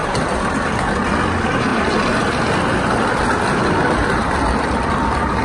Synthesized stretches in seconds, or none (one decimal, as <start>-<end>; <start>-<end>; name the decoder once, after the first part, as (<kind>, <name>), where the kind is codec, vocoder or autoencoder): none

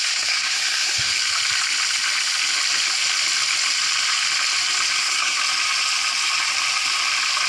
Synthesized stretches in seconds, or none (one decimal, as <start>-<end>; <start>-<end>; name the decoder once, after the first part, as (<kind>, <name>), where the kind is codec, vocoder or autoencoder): 0.0-1.1 (codec, SNAC); 5.0-5.4

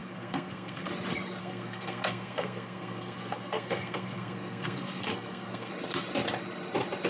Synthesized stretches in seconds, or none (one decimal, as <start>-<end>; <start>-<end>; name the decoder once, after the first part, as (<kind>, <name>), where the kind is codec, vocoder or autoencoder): 0.0-0.9 (codec, SNAC); 1.4-5.7